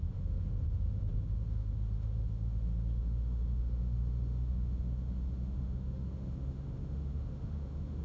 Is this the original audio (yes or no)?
no